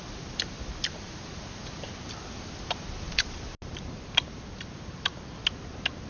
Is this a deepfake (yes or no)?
no